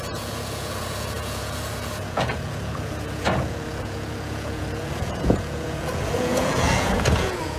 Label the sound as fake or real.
fake